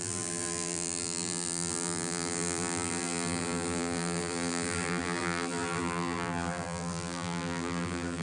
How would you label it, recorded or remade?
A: remade